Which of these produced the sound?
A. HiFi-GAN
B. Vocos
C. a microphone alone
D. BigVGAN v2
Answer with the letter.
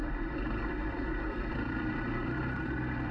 D